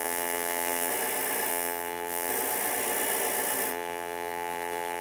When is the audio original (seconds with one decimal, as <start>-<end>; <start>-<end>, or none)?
0.9-1.5; 2.3-3.7